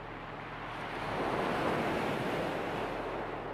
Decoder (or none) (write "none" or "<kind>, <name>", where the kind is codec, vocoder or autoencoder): none